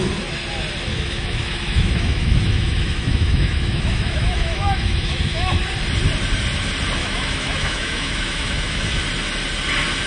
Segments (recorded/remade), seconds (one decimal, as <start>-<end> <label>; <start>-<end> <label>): 0.0-0.9 recorded; 0.9-5.6 remade; 5.6-7.0 recorded; 7.0-8.9 remade; 8.9-10.1 recorded